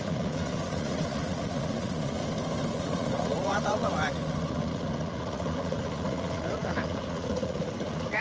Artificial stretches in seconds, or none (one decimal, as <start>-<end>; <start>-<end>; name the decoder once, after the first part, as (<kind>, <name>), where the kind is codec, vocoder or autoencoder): 0.0-2.2 (vocoder, Vocos); 2.7-8.2